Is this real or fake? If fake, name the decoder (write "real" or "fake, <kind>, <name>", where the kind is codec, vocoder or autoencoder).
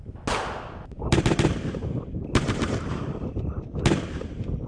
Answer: real